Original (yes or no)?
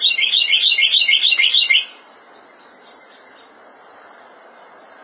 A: no